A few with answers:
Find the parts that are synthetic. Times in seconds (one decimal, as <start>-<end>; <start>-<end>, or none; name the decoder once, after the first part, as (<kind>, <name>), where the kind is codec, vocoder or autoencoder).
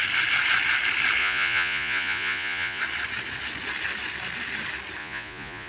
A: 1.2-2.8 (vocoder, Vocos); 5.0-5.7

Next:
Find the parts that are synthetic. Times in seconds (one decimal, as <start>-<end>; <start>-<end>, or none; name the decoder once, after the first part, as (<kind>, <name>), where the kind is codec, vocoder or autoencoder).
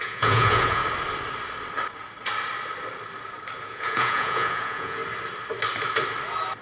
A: 0.0-0.8 (vocoder, Vocos); 3.6-5.0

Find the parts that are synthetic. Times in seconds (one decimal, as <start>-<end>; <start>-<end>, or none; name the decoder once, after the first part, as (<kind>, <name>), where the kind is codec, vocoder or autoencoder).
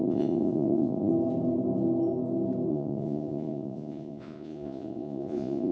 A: 0.0-1.1 (vocoder, Vocos); 2.7-5.7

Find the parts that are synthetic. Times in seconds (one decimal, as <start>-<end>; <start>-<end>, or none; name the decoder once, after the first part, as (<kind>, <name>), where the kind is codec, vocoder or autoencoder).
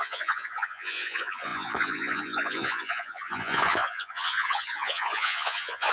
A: 0.0-5.9 (vocoder, Vocos)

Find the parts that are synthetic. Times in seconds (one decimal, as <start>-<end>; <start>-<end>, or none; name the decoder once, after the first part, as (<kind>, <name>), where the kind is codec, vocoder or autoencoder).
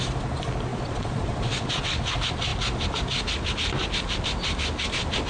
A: 0.7-1.7 (vocoder, Vocos)